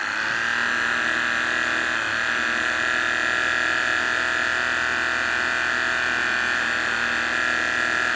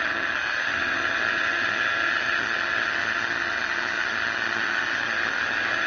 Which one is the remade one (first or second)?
second